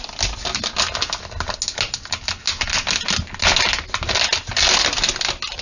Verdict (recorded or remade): recorded